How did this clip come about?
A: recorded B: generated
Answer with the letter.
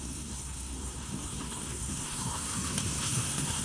B